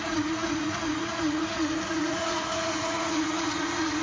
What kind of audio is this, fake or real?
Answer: fake